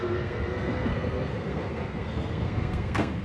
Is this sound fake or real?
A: fake